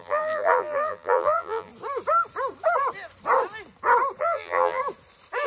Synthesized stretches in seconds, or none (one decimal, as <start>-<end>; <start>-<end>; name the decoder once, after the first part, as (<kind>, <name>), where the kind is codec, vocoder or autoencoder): 0.0-1.7 (vocoder, BigVGAN v2); 4.2-4.8